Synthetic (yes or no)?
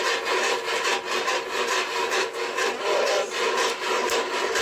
no